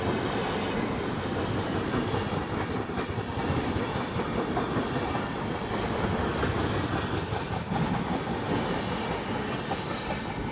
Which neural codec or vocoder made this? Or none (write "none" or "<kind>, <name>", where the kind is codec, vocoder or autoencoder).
none